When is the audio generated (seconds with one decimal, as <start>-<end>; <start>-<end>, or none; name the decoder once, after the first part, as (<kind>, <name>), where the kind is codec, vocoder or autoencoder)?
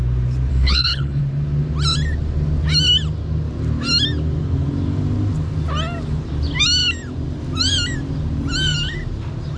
0.5-1.2 (codec, HILCodec)